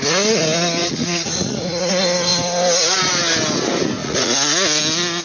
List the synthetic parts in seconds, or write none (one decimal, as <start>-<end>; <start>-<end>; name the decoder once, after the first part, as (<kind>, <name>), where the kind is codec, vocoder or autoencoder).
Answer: 0.8-1.9 (vocoder, Vocos); 4.0-4.8